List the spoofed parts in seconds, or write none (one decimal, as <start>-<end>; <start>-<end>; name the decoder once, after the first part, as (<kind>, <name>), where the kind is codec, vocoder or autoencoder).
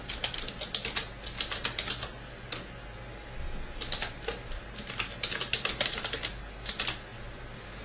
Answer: none